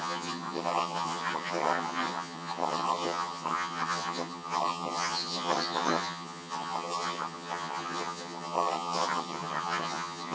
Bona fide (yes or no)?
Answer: no